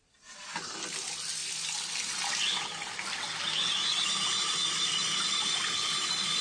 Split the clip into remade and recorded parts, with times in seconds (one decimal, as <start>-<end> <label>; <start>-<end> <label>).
0.0-6.4 recorded